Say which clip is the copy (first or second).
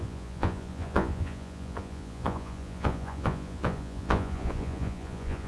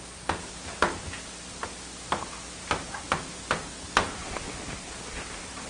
first